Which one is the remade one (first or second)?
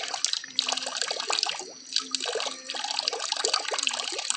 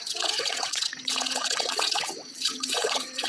second